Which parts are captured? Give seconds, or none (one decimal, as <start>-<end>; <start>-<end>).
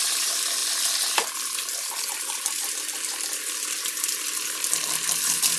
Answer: 0.0-5.6